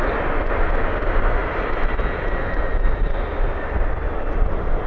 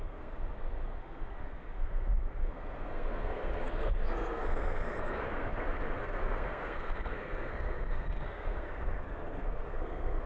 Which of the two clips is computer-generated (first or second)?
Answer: second